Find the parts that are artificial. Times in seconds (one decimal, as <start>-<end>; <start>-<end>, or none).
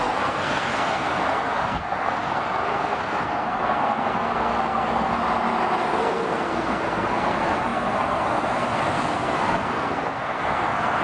0.0-5.2; 5.8-11.0